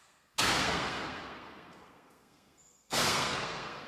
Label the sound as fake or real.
fake